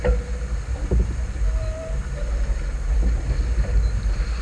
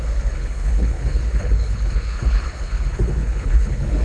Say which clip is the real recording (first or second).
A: first